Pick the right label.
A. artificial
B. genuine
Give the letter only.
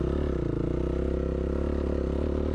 B